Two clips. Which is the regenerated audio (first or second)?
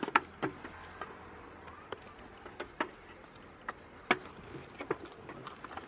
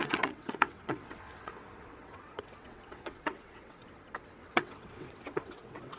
second